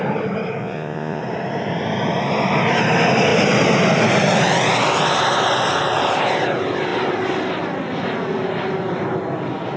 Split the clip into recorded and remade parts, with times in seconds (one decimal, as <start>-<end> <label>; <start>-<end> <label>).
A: 0.0-0.6 recorded; 0.6-1.2 remade; 1.2-9.8 recorded

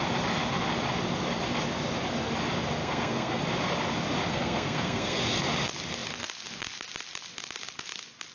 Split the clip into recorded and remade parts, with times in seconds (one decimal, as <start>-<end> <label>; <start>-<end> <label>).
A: 0.0-2.8 recorded; 2.8-3.4 remade; 3.4-4.3 recorded; 4.3-5.2 remade; 5.2-8.3 recorded

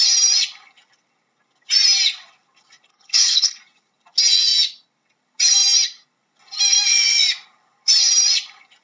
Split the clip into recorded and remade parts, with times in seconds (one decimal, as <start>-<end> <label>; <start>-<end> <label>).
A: 0.0-2.9 recorded; 2.9-3.6 remade; 3.6-8.8 recorded

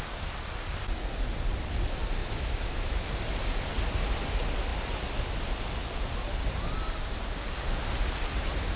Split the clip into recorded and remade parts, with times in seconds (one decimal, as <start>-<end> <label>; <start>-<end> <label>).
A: 0.0-2.2 recorded; 2.2-3.1 remade; 3.1-8.8 recorded

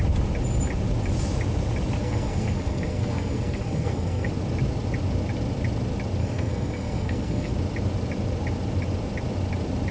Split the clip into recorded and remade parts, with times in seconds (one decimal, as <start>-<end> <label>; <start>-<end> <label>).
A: 0.0-2.0 recorded; 2.0-4.3 remade; 4.3-6.2 recorded; 6.2-7.5 remade; 7.5-9.9 recorded